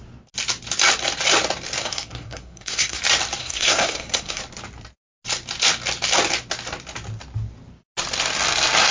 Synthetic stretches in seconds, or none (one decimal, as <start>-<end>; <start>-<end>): 1.8-3.0; 3.4-4.4